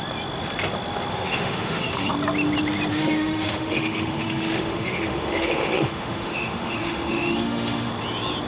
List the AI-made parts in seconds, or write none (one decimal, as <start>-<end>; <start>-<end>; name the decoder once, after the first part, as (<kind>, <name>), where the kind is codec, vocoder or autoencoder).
1.1-2.1 (autoencoder, DAC-VAE); 2.9-7.9